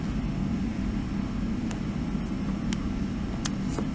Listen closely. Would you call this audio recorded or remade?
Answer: recorded